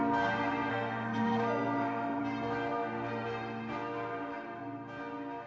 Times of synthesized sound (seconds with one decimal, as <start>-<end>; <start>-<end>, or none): 0.7-2.2